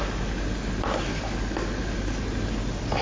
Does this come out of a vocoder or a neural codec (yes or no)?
no